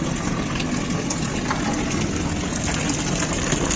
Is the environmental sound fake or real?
real